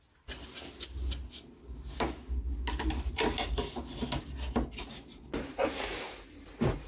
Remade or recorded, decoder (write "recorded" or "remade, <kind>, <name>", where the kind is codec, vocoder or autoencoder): recorded